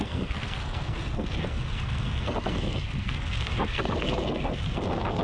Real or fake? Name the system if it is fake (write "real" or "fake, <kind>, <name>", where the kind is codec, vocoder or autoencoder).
fake, codec, SNAC